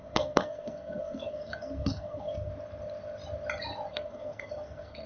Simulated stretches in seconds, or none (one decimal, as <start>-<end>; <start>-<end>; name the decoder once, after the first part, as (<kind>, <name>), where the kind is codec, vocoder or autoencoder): 0.0-2.5 (codec, SNAC); 3.9-5.1